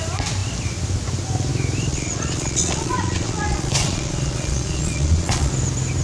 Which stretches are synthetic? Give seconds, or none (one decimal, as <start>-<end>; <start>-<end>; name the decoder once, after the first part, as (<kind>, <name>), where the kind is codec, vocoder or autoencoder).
1.9-5.5 (vocoder, Vocos)